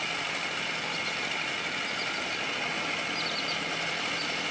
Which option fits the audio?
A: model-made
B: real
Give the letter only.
B